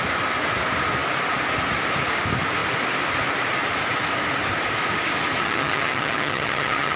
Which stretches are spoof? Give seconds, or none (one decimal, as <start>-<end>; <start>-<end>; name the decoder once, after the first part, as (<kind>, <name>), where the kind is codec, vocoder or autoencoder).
5.4-7.0 (vocoder, HiFi-GAN)